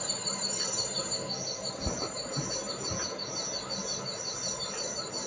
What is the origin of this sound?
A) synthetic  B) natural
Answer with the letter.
B